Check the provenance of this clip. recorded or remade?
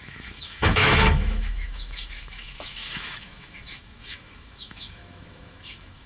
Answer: remade